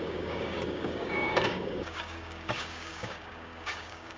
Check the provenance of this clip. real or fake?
fake